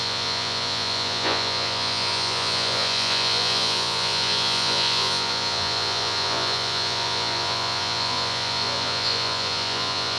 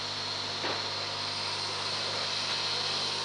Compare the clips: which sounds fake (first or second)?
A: first